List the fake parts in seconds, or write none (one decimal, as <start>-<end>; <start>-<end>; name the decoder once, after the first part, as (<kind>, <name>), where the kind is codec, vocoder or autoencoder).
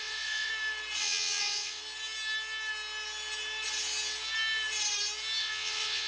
0.0-0.5 (vocoder, WaveNeXt); 1.0-1.8; 5.4-6.1